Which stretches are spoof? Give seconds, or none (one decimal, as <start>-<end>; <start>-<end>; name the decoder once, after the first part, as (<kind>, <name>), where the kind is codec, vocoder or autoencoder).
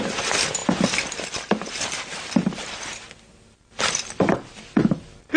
0.0-0.6 (vocoder, BigVGAN v2); 3.8-5.4